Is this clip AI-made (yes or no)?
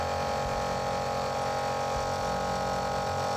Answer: no